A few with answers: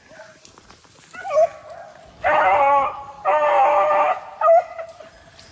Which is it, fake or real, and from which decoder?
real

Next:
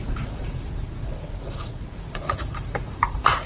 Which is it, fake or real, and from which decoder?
fake, vocoder, Vocos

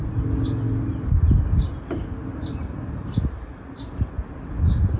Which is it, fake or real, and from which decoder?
real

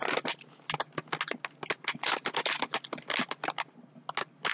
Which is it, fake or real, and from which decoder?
real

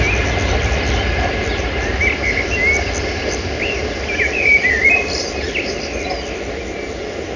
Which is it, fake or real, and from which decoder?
real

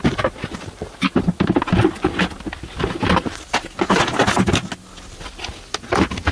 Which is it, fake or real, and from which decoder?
real